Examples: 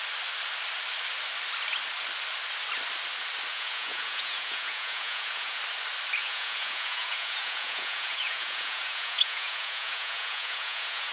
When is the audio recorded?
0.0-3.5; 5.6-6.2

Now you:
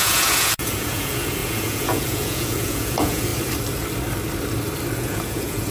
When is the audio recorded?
3.3-4.9

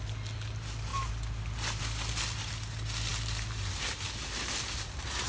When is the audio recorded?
0.0-5.3

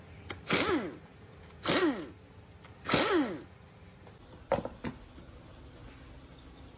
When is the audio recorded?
0.0-6.8

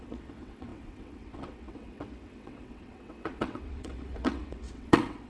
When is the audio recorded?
none

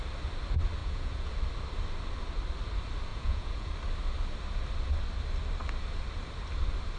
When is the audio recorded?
0.0-0.8; 1.3-3.1; 3.7-7.0

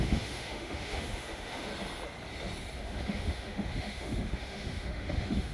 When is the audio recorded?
1.7-2.8

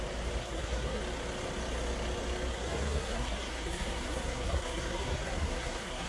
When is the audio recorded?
0.0-0.4; 1.0-2.5